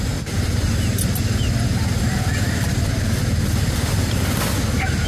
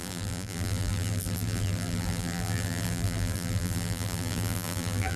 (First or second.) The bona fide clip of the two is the first